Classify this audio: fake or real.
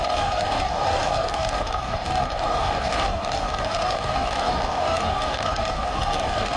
fake